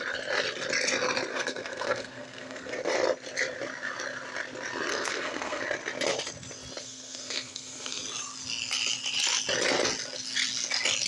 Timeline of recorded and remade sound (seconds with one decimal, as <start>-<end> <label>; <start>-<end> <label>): 0.0-1.3 recorded; 1.3-2.7 remade; 2.7-4.9 recorded; 4.9-5.6 remade; 5.6-6.8 recorded; 6.8-8.0 remade; 8.0-11.1 recorded